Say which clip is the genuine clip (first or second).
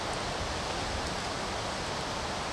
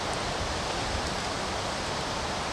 first